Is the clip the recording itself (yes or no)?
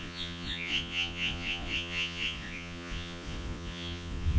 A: no